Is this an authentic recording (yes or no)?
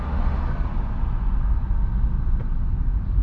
yes